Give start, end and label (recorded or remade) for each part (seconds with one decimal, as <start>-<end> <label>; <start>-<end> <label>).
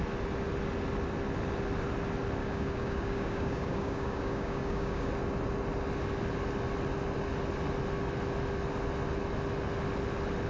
0.0-2.4 recorded; 2.4-5.1 remade; 5.1-10.5 recorded